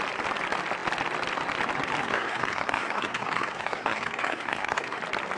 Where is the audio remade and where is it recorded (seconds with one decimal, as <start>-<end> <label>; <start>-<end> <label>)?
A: 0.0-2.0 recorded; 2.0-5.0 remade; 5.0-5.4 recorded